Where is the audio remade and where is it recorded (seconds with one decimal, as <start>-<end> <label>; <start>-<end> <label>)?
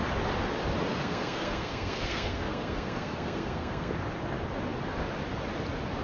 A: 0.0-0.9 recorded; 0.9-3.9 remade; 3.9-6.0 recorded